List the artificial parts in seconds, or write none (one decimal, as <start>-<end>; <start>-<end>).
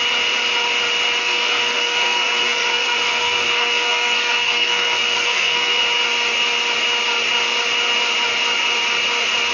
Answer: 1.2-5.8